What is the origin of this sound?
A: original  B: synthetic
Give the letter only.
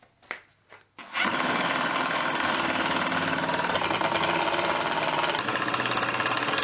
A